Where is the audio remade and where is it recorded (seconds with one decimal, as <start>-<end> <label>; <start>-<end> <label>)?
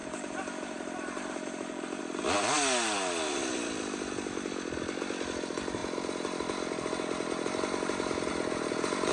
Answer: 0.0-2.0 remade; 2.0-9.1 recorded